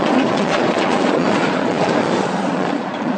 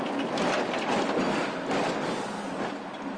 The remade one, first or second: first